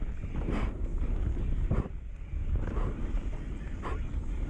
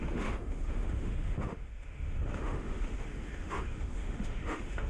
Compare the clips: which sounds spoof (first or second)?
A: second